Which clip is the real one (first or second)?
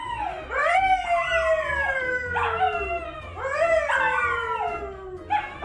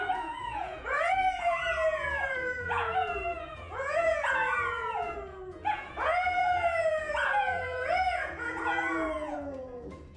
first